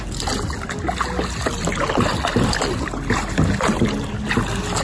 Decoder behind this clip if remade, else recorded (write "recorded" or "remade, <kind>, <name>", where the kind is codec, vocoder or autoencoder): recorded